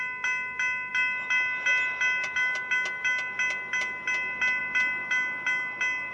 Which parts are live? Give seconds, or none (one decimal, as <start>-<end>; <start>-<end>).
0.0-6.1